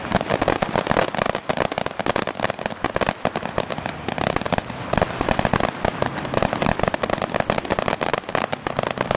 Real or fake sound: real